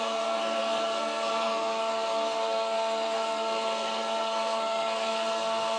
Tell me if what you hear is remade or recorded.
remade